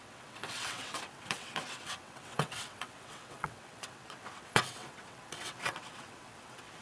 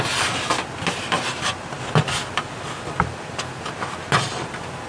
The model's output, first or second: first